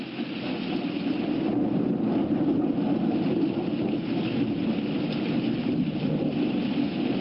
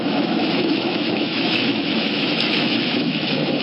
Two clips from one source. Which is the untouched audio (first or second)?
first